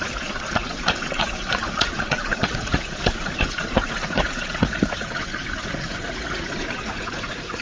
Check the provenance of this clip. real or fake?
fake